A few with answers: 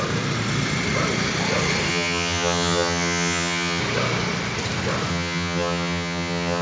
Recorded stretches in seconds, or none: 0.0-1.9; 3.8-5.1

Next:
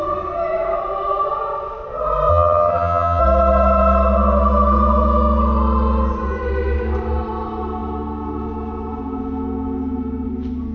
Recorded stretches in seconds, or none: 0.0-2.3; 3.2-10.7

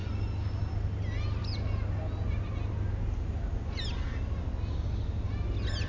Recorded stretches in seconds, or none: 0.0-5.9

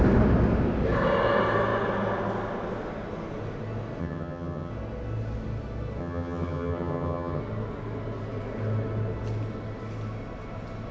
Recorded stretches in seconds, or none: 0.0-4.0; 4.7-6.0; 7.4-10.9

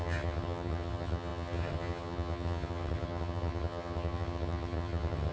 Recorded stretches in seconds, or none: none

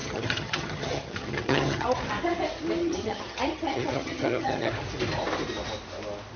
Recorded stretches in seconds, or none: 2.0-2.8; 4.7-6.4

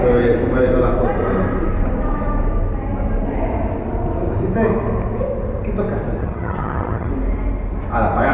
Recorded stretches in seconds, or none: 0.0-6.2; 7.1-8.3